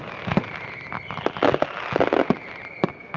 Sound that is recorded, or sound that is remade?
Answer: recorded